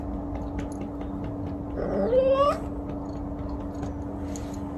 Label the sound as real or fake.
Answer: real